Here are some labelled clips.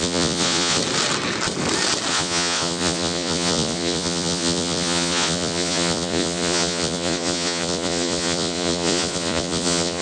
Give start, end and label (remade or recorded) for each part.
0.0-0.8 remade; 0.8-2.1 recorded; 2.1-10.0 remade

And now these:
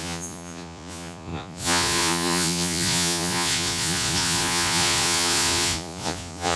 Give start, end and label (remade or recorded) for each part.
0.0-6.6 remade

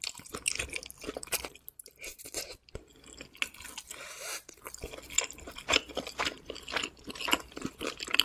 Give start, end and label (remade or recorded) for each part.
0.0-8.2 recorded

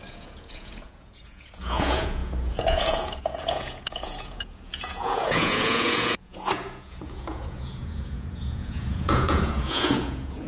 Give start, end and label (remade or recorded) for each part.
0.0-10.5 remade

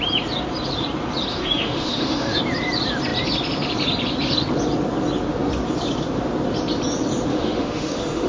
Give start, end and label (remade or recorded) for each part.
0.0-1.3 recorded; 1.3-2.4 remade; 2.4-7.3 recorded; 7.3-8.3 remade

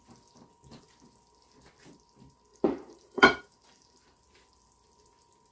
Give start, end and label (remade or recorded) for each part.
0.0-2.5 recorded; 2.5-4.2 remade; 4.2-5.5 recorded

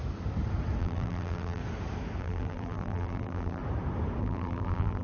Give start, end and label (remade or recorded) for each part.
0.0-0.8 recorded; 0.8-1.6 remade; 1.6-2.2 recorded; 2.2-3.6 remade; 3.6-4.2 recorded; 4.2-5.0 remade